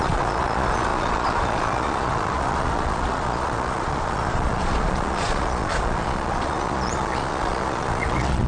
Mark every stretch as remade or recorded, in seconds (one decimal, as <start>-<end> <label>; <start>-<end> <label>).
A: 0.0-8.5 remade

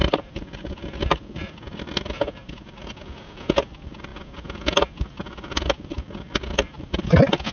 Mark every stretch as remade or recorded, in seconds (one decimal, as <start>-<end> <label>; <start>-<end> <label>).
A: 0.0-7.5 recorded

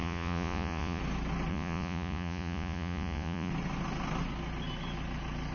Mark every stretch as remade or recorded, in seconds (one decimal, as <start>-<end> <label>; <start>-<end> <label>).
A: 0.0-1.0 remade; 1.0-1.5 recorded; 1.5-3.5 remade; 3.5-5.5 recorded

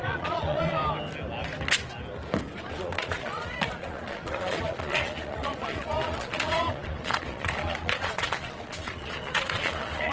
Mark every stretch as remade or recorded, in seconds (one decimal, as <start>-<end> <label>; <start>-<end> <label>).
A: 0.0-0.8 remade; 0.8-2.7 recorded; 2.7-10.1 remade

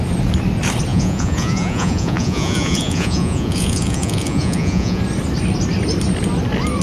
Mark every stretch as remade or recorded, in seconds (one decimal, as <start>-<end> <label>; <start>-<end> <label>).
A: 0.0-0.9 recorded; 0.9-5.0 remade; 5.0-6.8 recorded

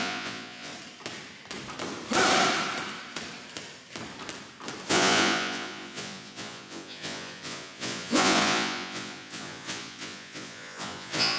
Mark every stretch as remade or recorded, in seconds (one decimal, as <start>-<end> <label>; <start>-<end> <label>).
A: 0.0-0.7 remade; 0.7-4.9 recorded; 4.9-11.4 remade

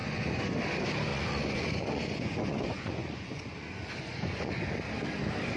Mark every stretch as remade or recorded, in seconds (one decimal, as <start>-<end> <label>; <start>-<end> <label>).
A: 0.0-0.6 remade; 0.6-1.1 recorded; 1.1-4.5 remade; 4.5-5.6 recorded

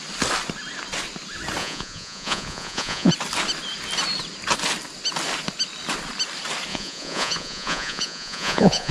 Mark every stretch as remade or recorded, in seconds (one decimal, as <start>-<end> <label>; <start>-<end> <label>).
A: 0.0-1.6 recorded; 1.6-3.1 remade; 3.1-6.7 recorded; 6.7-8.9 remade